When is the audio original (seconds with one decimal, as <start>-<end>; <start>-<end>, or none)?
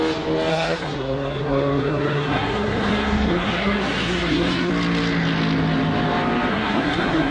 0.0-0.5; 4.7-6.5